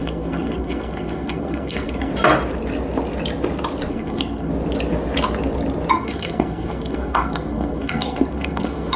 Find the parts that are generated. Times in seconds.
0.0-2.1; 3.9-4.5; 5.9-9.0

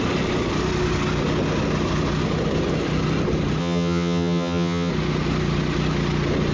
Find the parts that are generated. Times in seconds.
3.6-4.9